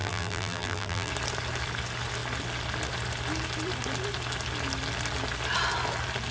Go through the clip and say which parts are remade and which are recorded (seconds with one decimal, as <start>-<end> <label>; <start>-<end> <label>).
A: 0.0-1.1 remade; 1.1-6.3 recorded